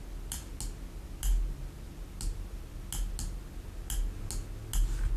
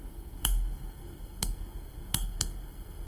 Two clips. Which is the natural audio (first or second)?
first